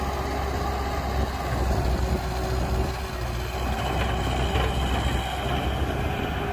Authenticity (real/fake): real